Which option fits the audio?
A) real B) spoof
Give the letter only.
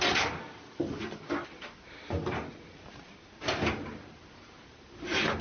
A